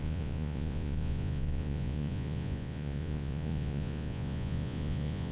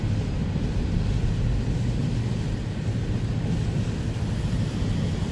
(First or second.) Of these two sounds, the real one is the second